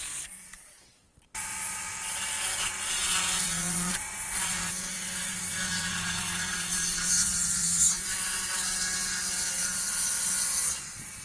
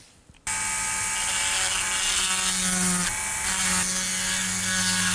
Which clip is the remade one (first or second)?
first